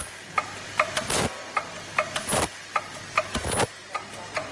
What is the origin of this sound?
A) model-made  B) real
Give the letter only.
B